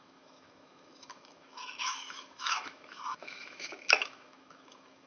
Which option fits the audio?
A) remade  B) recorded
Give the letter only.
A